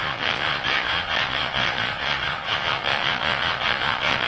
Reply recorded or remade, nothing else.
remade